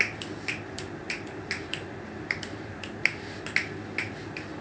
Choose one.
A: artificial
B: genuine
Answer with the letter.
B